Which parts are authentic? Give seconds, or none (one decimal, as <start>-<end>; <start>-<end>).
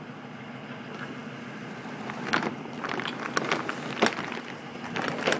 0.0-5.4